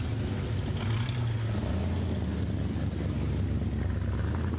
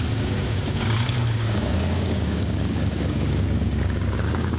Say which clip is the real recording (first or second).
first